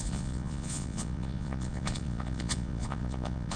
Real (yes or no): no